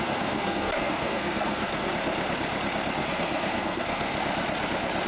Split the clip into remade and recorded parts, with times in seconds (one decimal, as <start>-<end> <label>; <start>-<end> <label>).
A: 0.0-1.9 remade; 1.9-3.0 recorded; 3.0-4.1 remade; 4.1-5.1 recorded